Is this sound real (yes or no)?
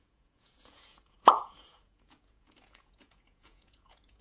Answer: no